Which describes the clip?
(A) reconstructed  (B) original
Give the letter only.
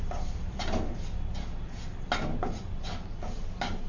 B